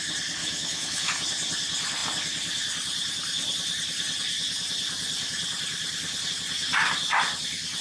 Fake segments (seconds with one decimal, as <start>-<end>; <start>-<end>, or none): 0.4-1.1